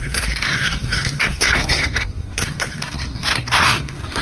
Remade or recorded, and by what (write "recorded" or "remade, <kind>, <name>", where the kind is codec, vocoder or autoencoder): remade, codec, SNAC